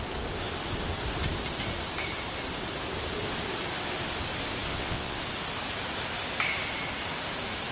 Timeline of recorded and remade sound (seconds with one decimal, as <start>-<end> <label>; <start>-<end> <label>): 0.0-4.7 recorded; 4.7-5.2 remade; 5.2-7.7 recorded